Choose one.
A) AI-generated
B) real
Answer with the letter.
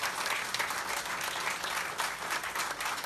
B